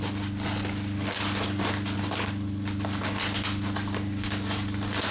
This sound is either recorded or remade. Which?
recorded